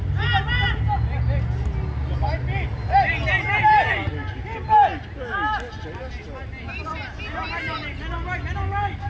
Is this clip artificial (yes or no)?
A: no